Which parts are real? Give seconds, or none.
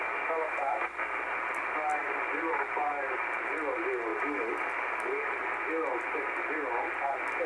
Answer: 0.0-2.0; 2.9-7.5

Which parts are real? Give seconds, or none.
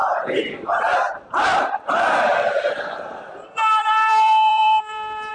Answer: none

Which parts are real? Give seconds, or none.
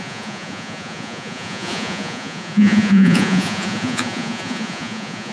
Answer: none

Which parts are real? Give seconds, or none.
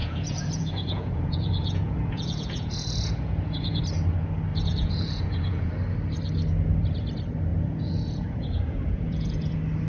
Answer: 3.8-4.5; 5.7-7.5; 9.5-9.9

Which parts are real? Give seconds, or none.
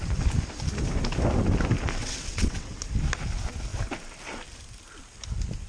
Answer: 0.0-2.0; 2.8-5.7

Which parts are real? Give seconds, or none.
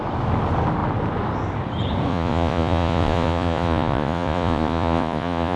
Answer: 0.0-2.1